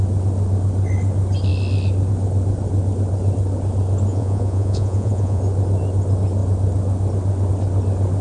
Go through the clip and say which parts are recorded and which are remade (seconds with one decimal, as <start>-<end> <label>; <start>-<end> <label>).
0.0-4.1 recorded; 4.1-5.4 remade; 5.4-8.2 recorded